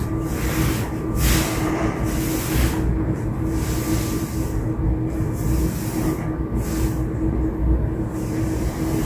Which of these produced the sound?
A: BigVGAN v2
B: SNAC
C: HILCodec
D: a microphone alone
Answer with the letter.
D